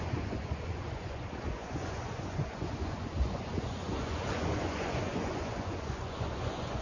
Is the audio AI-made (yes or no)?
yes